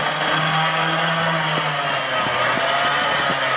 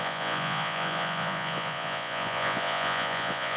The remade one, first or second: second